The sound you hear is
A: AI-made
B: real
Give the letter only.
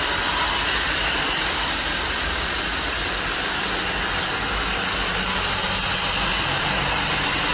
B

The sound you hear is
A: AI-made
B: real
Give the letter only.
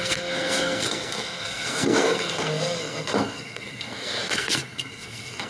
A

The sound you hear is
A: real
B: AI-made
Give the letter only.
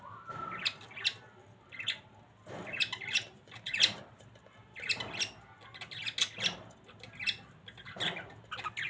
A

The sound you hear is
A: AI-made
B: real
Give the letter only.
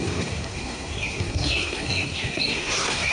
A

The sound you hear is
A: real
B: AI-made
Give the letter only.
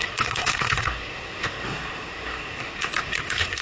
B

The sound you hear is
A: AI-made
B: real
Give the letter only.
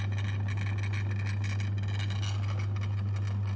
B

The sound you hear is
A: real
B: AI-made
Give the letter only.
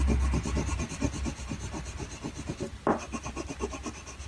A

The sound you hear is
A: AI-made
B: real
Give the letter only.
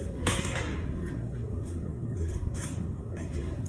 A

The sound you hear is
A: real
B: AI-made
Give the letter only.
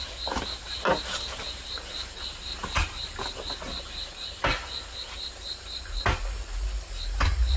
A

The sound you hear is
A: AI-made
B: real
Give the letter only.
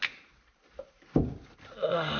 B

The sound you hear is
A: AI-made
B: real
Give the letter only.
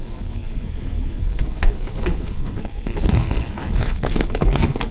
A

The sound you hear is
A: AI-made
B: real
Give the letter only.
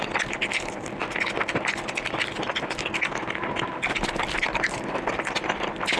B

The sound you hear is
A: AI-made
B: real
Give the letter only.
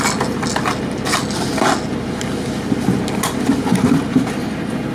B